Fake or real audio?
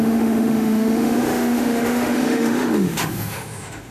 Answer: fake